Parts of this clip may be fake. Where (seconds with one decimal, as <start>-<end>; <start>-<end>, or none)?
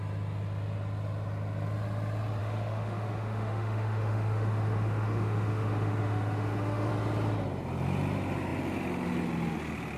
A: 2.4-6.9